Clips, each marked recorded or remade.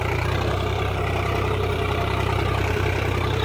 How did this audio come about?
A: remade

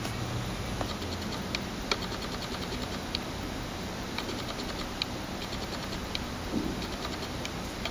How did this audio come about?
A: recorded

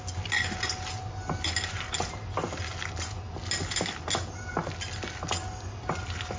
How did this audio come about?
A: recorded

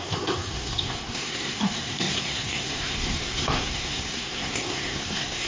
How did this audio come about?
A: remade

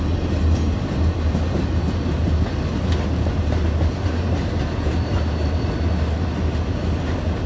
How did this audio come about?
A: recorded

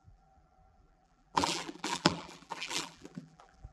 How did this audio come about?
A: remade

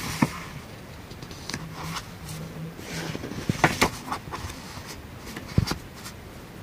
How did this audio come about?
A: recorded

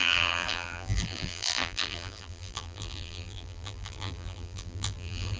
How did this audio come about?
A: remade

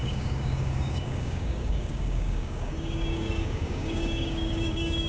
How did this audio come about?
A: remade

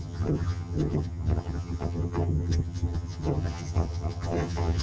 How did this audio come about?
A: remade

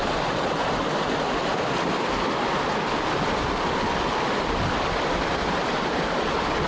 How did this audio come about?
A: recorded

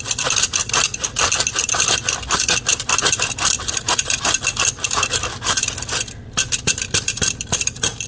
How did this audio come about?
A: recorded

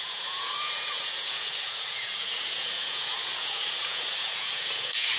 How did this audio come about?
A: remade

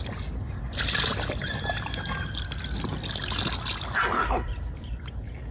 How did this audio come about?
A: recorded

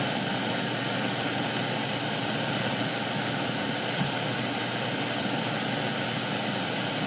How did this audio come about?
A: recorded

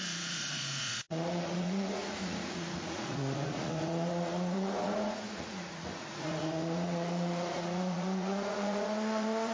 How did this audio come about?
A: remade